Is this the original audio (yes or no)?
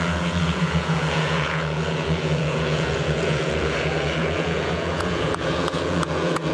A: no